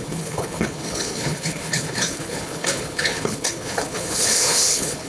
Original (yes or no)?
no